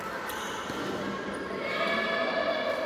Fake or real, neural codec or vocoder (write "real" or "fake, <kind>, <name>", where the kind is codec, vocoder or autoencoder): real